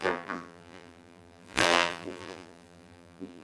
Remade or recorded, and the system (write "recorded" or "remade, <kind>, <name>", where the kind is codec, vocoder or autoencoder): remade, vocoder, BigVGAN v2